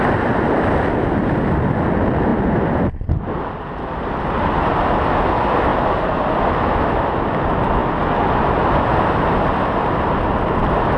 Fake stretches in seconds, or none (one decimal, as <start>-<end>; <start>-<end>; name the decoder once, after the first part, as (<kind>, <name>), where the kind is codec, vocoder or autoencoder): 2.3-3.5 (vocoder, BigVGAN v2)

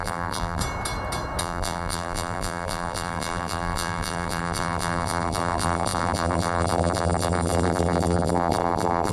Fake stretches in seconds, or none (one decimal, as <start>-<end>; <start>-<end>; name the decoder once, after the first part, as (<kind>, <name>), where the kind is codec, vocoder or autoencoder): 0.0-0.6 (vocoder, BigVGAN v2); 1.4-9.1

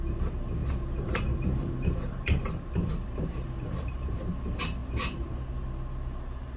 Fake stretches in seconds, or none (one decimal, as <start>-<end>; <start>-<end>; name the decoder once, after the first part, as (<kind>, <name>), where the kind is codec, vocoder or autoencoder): 0.6-4.2 (vocoder, BigVGAN v2); 4.8-5.3

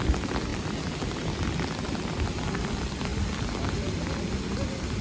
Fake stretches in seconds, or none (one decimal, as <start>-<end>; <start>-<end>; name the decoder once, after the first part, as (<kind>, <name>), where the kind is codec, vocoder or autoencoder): none

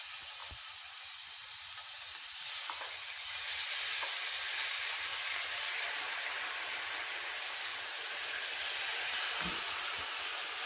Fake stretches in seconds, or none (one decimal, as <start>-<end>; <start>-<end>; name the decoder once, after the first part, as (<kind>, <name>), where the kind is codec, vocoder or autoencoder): 0.4-3.2 (vocoder, BigVGAN v2)

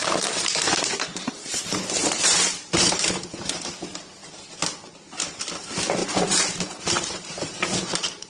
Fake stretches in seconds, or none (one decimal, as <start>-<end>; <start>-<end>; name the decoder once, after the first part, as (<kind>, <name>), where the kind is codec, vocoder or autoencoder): 0.0-3.7 (vocoder, BigVGAN v2); 6.0-8.3

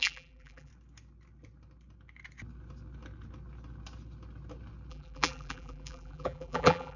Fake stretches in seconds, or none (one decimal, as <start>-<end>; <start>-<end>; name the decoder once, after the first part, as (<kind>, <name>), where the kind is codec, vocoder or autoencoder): 0.0-0.7 (vocoder, BigVGAN v2); 4.9-7.0